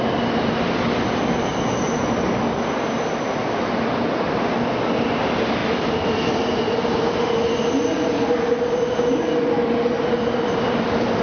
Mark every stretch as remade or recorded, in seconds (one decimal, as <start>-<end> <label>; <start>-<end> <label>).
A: 0.0-11.2 recorded